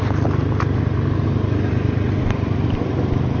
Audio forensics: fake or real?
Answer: real